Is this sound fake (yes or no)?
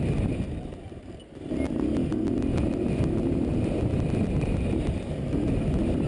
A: no